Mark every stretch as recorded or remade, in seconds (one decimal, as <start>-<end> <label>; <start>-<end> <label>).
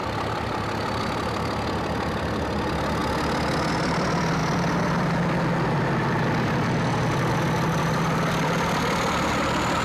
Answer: 0.0-9.8 recorded